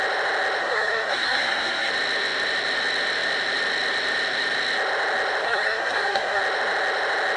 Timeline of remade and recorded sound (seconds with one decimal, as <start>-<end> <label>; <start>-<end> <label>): 0.0-0.6 recorded; 0.6-1.9 remade; 1.9-5.4 recorded; 5.4-6.4 remade; 6.4-7.4 recorded